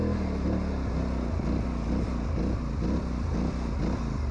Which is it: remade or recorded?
recorded